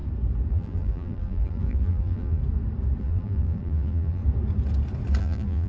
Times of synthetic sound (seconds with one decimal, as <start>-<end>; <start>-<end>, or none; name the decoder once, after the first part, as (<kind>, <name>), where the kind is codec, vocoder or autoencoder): 0.5-2.4 (vocoder, BigVGAN v2); 3.0-4.2; 5.2-5.7